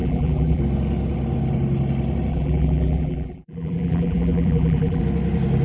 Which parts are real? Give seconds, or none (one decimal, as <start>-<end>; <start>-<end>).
0.6-2.3; 5.0-5.6